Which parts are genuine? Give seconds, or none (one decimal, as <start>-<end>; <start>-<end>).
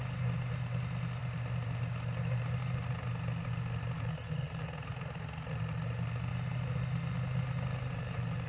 0.0-8.5